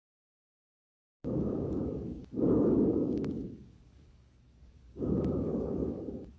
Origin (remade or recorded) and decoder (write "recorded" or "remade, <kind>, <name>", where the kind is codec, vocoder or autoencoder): remade, codec, DAC